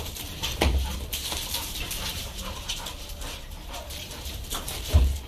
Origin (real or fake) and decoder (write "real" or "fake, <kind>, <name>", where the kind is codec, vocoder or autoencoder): fake, vocoder, BigVGAN v2